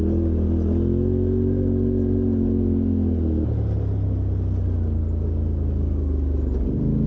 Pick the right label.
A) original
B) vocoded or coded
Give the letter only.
A